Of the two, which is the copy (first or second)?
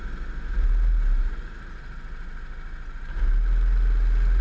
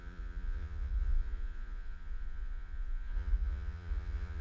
second